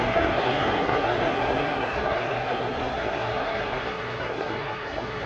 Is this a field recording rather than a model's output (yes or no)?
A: no